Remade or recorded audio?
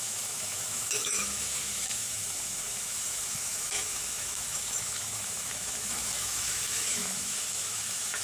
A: remade